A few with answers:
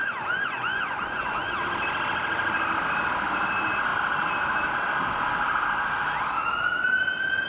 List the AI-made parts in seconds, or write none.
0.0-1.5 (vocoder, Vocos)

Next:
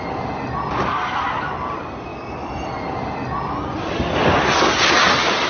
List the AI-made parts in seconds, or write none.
none

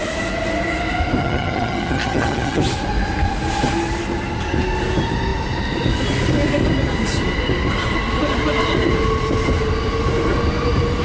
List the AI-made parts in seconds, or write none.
1.2-2.6 (vocoder, HiFi-GAN)

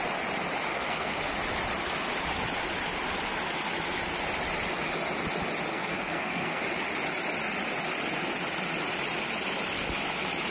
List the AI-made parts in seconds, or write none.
0.7-1.2 (codec, SNAC); 5.7-6.6

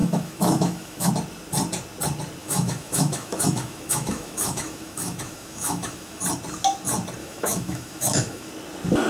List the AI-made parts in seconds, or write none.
0.0-1.1 (autoencoder, DAC-VAE); 2.4-6.2; 7.2-8.5